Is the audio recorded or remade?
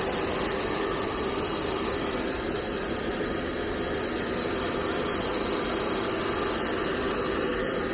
recorded